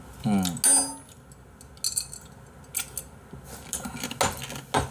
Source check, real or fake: real